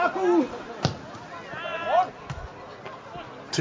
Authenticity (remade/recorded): recorded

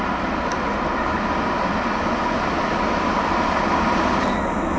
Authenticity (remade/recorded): recorded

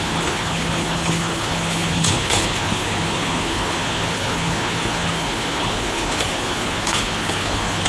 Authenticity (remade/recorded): remade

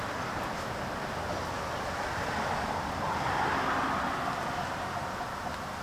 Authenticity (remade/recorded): recorded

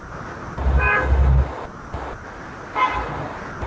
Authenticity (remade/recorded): recorded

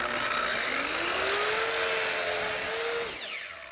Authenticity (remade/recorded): recorded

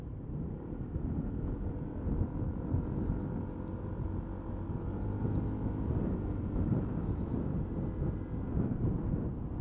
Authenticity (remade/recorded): recorded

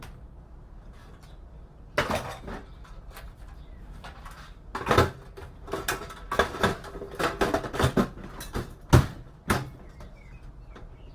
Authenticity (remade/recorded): recorded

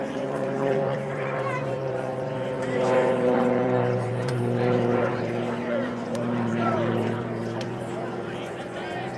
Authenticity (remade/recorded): remade